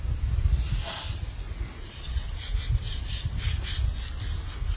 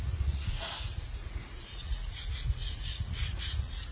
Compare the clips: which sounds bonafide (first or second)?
first